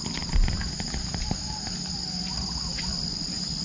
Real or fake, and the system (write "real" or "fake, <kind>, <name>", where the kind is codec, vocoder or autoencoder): real